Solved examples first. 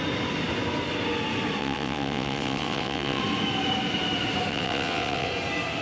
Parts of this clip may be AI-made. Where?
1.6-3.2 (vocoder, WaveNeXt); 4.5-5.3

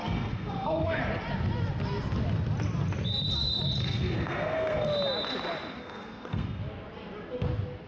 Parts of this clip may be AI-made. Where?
0.0-1.0 (codec, SNAC); 3.8-4.9; 5.8-6.6

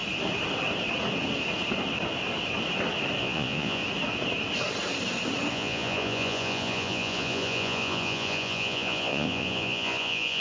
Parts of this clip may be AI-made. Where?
3.2-3.8 (vocoder, Vocos); 5.5-10.4

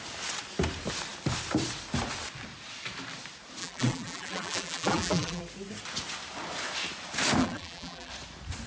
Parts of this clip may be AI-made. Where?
3.6-5.4 (vocoder, BigVGAN v2); 7.4-8.1

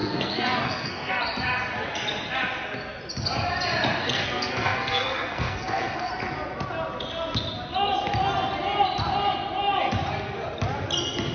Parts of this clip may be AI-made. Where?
0.0-1.2 (codec, SNAC); 4.0-6.1